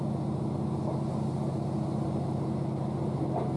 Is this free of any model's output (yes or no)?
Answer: yes